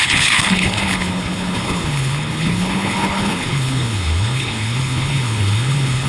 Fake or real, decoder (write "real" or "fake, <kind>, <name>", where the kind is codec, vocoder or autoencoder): fake, codec, HILCodec